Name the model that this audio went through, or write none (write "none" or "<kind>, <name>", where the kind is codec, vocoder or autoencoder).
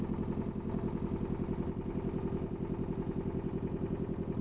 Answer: none